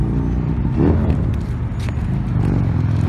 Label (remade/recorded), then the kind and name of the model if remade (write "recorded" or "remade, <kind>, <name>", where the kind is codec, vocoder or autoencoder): recorded